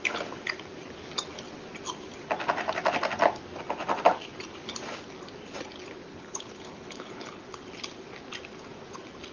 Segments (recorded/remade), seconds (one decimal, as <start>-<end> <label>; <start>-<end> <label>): 0.0-6.1 recorded; 6.1-7.5 remade; 7.5-9.3 recorded

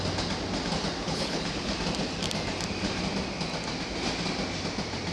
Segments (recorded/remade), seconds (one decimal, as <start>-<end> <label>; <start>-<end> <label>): 0.0-1.0 recorded; 1.0-1.7 remade; 1.7-5.1 recorded

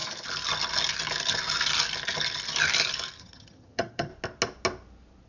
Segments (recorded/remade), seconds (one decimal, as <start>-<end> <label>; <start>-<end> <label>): 0.0-3.2 recorded; 3.2-4.1 remade; 4.1-5.3 recorded

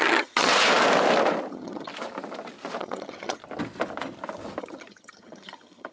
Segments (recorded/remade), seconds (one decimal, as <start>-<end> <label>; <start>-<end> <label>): 0.0-0.5 remade; 0.5-1.5 recorded; 1.5-1.9 remade; 1.9-2.8 recorded; 2.8-3.4 remade; 3.4-4.6 recorded; 4.6-5.9 remade

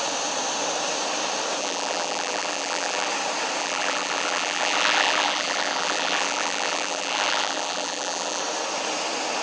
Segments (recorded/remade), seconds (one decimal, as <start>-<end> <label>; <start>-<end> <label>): 0.0-1.6 recorded; 1.6-3.1 remade; 3.1-3.6 recorded; 3.6-8.4 remade; 8.4-9.4 recorded

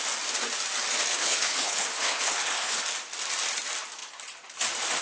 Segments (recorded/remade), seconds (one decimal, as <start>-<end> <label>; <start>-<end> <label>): 0.0-1.1 recorded; 1.1-2.8 remade; 2.8-5.0 recorded